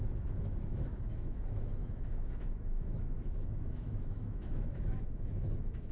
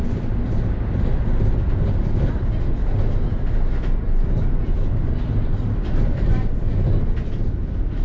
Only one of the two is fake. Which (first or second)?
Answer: first